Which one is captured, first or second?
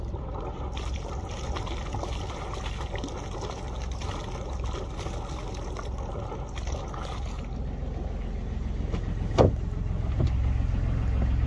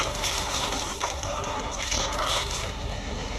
first